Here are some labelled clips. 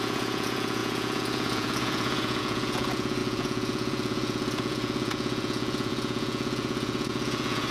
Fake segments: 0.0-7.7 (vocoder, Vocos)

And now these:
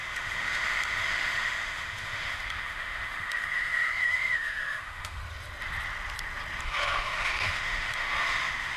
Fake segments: 0.0-5.2 (autoencoder, DAC-VAE); 6.6-8.8

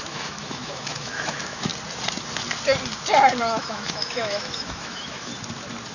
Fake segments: 0.0-1.7 (autoencoder, DAC-VAE); 3.4-5.3

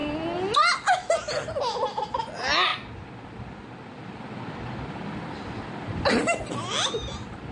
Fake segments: none

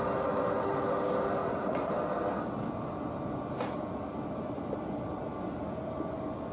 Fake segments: 1.4-1.9 (vocoder, Vocos)

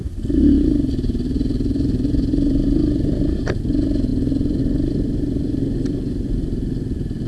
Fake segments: 0.0-3.6 (vocoder, BigVGAN v2)